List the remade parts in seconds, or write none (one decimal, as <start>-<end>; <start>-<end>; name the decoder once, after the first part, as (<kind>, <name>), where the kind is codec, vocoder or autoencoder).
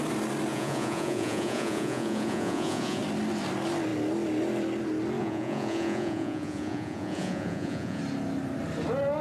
0.5-3.0 (vocoder, Vocos); 5.2-8.0